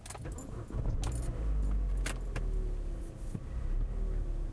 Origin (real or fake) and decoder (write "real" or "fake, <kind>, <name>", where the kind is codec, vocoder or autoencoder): real